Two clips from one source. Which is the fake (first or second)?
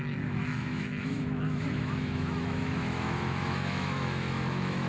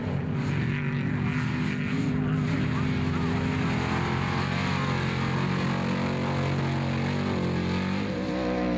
first